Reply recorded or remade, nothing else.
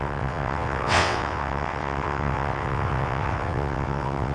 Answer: remade